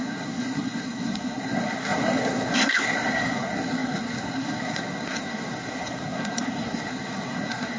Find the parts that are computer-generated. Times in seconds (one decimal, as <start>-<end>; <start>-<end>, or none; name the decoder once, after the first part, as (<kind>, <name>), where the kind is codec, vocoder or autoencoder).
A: 0.0-7.8 (codec, SNAC)